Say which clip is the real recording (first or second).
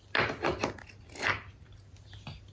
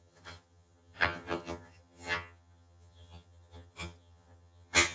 first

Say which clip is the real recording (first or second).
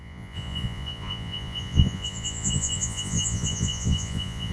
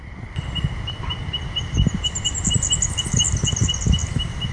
second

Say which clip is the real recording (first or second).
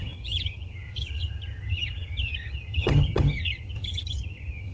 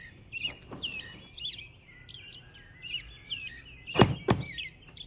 second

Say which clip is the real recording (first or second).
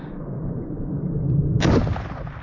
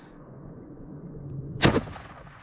first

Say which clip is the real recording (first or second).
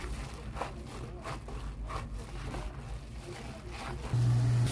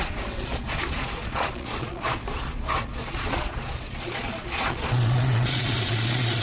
first